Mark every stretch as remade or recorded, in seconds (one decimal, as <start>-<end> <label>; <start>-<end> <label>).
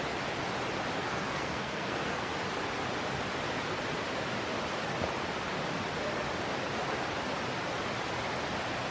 0.0-1.0 recorded; 1.0-2.3 remade; 2.3-8.9 recorded